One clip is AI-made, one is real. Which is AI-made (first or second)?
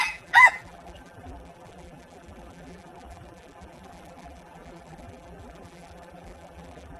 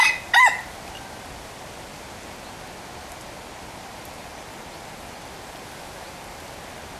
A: first